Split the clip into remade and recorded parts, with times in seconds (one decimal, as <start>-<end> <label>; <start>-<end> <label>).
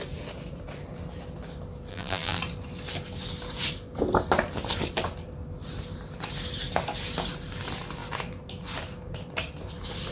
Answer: 0.0-1.9 recorded; 1.9-2.4 remade; 2.4-10.1 recorded